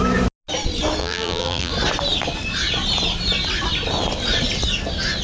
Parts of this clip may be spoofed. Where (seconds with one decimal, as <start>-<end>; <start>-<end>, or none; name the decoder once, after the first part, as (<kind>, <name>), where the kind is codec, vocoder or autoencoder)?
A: 1.0-1.7 (vocoder, BigVGAN v2)